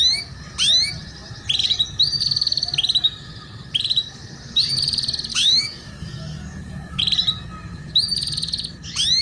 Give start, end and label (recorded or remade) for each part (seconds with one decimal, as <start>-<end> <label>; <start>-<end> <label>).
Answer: 0.0-5.3 recorded; 5.3-7.0 remade; 7.0-9.2 recorded